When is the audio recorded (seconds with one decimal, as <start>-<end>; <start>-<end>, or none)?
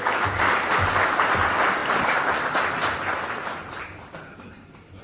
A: 0.0-1.8